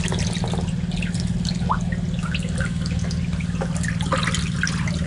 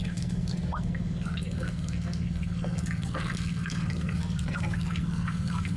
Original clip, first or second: first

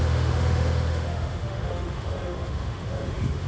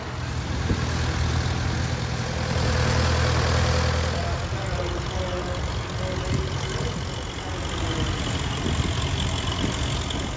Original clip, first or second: second